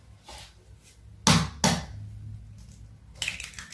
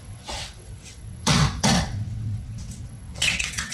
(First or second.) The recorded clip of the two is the first